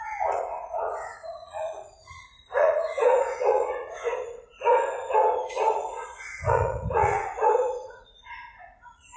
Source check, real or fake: fake